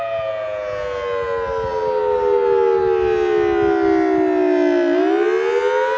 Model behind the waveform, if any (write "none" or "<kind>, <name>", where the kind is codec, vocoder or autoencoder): none